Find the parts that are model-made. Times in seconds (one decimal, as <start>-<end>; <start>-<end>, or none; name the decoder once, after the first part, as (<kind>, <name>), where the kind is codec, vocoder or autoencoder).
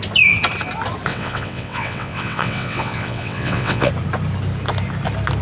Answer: 1.1-3.9 (vocoder, WaveNeXt)